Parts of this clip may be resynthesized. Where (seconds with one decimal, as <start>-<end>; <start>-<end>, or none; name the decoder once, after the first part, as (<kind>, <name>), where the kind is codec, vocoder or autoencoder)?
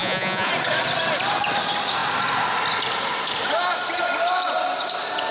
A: 0.0-0.5 (vocoder, Vocos)